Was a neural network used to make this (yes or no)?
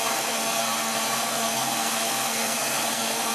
yes